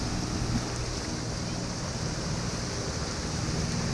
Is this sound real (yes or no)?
yes